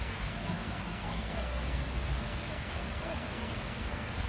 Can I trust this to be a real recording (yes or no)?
no